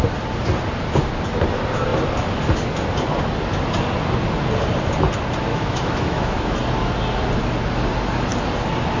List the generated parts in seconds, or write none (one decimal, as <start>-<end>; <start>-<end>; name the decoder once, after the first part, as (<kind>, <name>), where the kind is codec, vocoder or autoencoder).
5.5-6.6 (autoencoder, DAC-VAE)